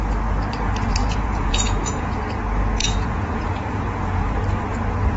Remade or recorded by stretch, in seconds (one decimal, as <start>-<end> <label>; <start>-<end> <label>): 0.0-1.0 recorded; 1.0-2.2 remade; 2.2-2.8 recorded; 2.8-4.4 remade; 4.4-5.2 recorded

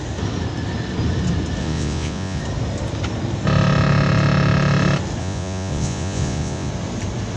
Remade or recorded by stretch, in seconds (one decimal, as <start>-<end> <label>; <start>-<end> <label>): 0.0-1.6 recorded; 1.6-2.4 remade; 2.4-5.2 recorded; 5.2-6.7 remade; 6.7-7.4 recorded

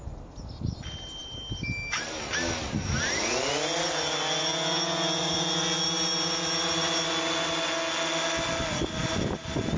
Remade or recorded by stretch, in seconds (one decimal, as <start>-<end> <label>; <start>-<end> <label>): 0.0-9.8 recorded

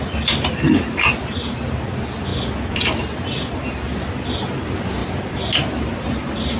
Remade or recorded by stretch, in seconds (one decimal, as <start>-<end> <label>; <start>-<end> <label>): 0.0-6.6 recorded